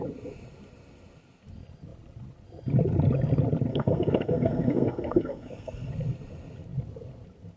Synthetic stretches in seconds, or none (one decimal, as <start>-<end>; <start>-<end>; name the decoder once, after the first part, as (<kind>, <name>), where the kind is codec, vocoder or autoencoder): 3.7-5.9 (codec, SNAC)